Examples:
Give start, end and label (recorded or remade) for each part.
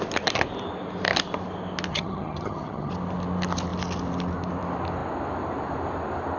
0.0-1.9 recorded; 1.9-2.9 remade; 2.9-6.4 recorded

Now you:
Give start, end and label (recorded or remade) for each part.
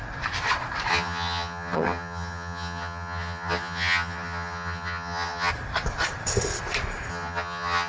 0.0-0.9 recorded; 0.9-5.5 remade; 5.5-7.1 recorded; 7.1-7.9 remade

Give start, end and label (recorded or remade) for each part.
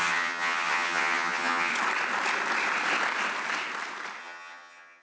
0.0-1.7 remade; 1.7-4.2 recorded; 4.2-5.0 remade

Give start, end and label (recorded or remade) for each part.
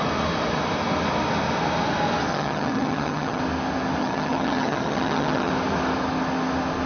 0.0-2.3 recorded; 2.3-3.4 remade; 3.4-4.0 recorded; 4.0-5.5 remade; 5.5-6.9 recorded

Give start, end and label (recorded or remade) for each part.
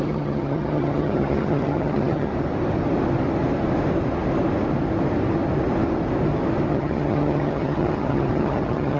0.0-2.3 remade; 2.3-6.7 recorded; 6.7-9.0 remade